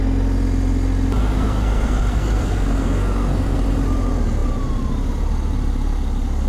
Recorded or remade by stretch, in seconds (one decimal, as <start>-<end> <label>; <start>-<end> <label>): 0.0-1.2 recorded; 1.2-3.6 remade; 3.6-6.5 recorded